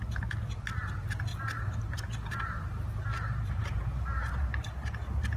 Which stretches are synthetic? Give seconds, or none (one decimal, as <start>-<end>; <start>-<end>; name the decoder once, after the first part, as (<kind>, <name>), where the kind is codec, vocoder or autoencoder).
1.3-4.5 (vocoder, BigVGAN v2)